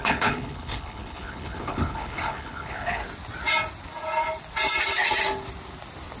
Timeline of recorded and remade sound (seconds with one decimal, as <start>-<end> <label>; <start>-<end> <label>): 0.0-3.0 remade; 3.0-6.2 recorded